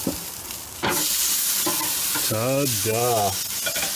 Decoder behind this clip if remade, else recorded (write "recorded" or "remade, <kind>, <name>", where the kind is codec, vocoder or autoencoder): recorded